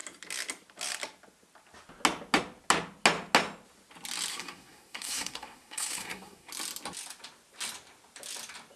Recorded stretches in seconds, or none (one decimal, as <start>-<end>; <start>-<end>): 0.0-4.3; 6.5-8.8